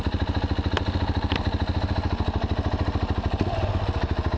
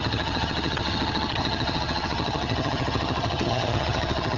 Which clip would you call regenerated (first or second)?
second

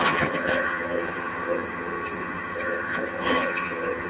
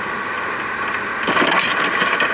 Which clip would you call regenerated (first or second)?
first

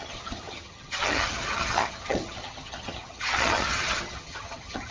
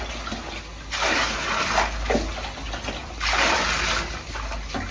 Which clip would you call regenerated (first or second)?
first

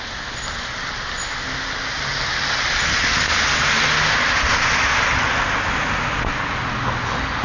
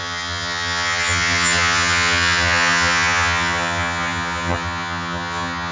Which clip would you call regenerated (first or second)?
second